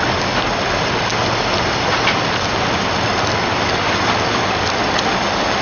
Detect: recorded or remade recorded